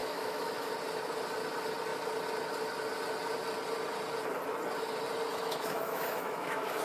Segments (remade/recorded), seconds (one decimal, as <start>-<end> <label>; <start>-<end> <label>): 0.0-0.7 remade; 0.7-5.3 recorded; 5.3-6.8 remade